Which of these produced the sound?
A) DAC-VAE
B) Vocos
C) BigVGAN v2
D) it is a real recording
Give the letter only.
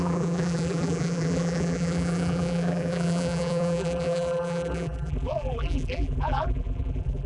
C